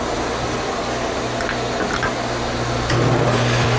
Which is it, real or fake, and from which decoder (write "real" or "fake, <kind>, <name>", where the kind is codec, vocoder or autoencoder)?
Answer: real